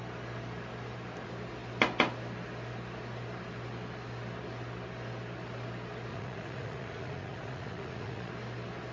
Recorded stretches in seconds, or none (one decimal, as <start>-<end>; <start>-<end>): 0.0-6.1; 8.3-8.9